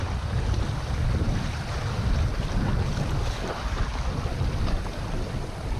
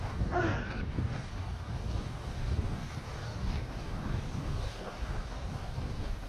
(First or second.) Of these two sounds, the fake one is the second